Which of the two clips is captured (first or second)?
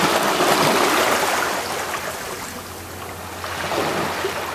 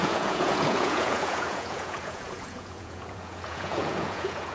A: first